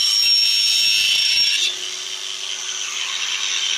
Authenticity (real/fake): real